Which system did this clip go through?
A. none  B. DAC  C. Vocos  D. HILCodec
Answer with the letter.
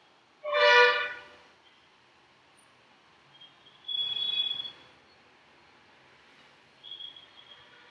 A